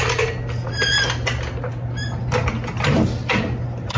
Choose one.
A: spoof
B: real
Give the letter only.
B